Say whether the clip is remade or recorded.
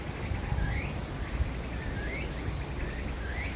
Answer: recorded